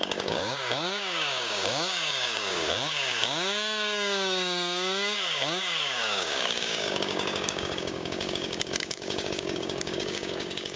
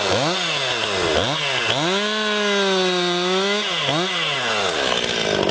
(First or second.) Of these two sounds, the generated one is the first